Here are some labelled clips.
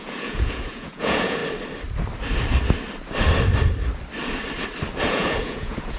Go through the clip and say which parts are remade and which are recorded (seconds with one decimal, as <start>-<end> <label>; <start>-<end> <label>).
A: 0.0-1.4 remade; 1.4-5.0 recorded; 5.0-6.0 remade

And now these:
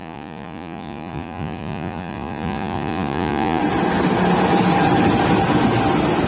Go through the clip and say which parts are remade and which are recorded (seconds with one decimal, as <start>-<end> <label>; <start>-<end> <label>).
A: 0.0-3.6 remade; 3.6-6.3 recorded

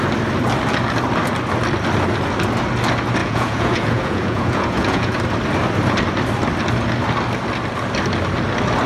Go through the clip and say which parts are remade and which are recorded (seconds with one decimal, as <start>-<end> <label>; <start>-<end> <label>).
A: 0.0-3.2 recorded; 3.2-5.2 remade; 5.2-8.9 recorded

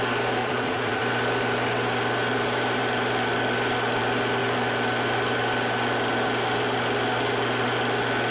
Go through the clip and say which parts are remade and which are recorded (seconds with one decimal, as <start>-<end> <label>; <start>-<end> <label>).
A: 0.0-0.4 recorded; 0.4-1.0 remade; 1.0-8.3 recorded

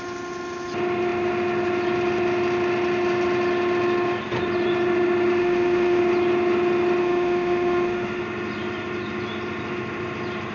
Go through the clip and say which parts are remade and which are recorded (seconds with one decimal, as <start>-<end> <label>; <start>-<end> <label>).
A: 0.0-5.4 recorded; 5.4-6.0 remade; 6.0-7.0 recorded; 7.0-8.2 remade; 8.2-10.5 recorded

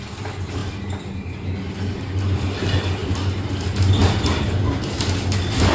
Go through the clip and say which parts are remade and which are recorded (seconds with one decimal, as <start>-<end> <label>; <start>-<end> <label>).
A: 0.0-5.7 recorded

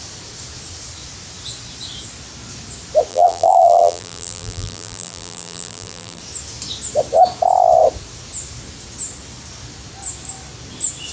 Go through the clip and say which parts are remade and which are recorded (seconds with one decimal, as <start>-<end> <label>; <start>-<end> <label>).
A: 0.0-3.1 recorded; 3.1-6.2 remade; 6.2-11.1 recorded